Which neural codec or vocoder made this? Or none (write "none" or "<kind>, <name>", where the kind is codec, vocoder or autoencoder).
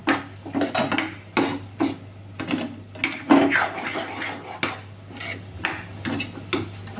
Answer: none